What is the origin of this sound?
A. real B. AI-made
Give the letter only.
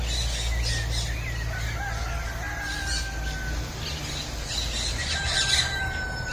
A